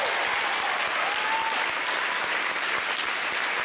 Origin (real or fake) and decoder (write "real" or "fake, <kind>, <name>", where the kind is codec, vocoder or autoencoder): real